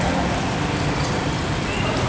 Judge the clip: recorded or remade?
remade